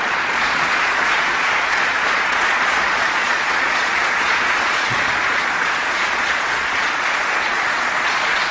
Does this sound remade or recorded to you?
remade